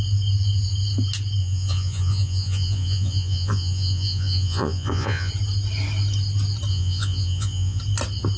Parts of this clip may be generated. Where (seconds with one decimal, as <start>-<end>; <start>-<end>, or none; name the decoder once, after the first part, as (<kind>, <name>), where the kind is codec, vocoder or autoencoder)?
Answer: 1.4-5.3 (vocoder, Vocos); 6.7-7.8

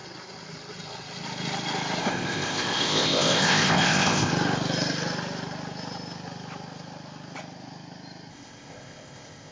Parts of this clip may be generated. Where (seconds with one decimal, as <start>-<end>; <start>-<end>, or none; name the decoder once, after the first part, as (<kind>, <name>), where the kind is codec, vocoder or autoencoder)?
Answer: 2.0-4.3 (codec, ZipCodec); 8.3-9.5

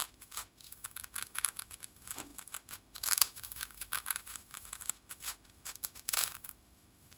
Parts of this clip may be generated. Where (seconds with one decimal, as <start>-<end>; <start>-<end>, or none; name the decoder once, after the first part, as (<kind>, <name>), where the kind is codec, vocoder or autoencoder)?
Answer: 0.0-7.2 (autoencoder, DAC-VAE)

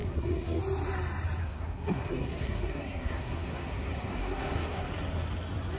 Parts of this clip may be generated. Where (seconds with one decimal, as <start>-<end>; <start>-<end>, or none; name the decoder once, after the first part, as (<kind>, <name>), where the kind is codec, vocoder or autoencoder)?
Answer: 0.0-0.6 (codec, SNAC); 1.4-4.9

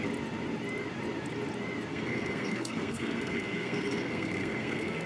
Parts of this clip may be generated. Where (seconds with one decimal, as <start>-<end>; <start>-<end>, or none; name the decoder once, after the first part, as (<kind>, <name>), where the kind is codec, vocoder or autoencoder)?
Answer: 1.9-5.1 (codec, SNAC)

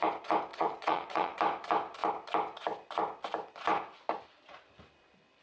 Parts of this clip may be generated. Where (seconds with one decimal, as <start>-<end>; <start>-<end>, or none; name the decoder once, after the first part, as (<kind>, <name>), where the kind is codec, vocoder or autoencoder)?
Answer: 0.5-1.4 (vocoder, WaveNeXt)

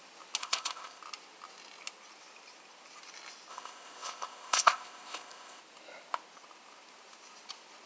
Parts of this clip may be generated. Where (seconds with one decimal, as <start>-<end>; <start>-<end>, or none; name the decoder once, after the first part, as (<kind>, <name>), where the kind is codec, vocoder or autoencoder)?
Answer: 0.4-1.0 (codec, ZipCodec); 3.5-5.6

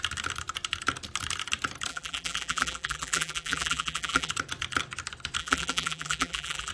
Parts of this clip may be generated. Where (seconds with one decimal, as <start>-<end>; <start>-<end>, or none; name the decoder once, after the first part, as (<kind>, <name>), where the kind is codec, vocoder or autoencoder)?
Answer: 1.9-4.3 (vocoder, BigVGAN v2); 5.4-6.7